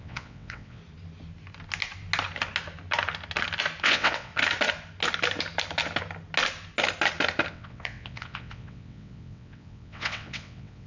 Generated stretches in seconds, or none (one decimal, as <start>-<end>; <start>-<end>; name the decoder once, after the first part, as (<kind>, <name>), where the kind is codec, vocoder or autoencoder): 0.0-0.8 (vocoder, WaveNeXt); 3.8-4.3; 7.5-10.9